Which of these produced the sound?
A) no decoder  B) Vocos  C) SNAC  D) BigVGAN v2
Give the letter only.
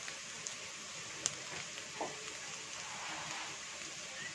A